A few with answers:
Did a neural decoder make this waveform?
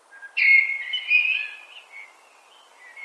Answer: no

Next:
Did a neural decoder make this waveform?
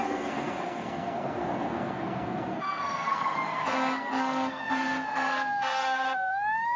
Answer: yes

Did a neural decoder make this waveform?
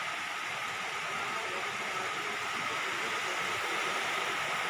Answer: no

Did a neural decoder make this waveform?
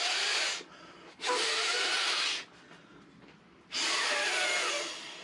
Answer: no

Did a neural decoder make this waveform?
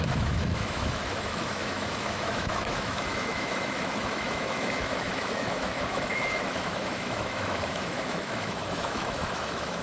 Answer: yes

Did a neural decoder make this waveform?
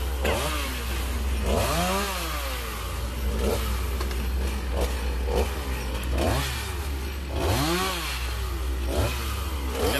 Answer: no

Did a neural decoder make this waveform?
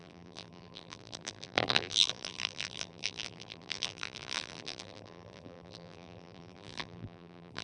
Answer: yes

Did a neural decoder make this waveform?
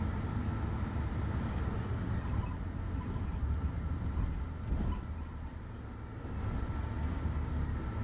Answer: no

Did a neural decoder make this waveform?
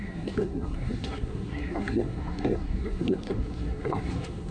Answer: yes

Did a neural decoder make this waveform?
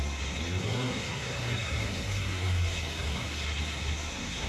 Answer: yes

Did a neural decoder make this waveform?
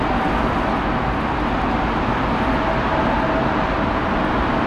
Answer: no